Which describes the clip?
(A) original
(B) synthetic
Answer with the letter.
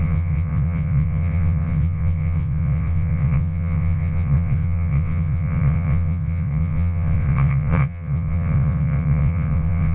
B